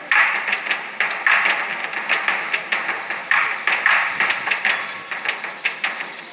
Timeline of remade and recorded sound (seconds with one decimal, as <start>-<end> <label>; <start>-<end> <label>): 0.0-6.3 recorded